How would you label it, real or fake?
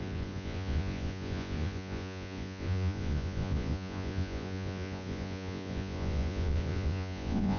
fake